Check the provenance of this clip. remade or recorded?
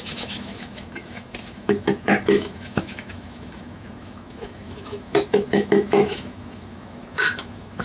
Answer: remade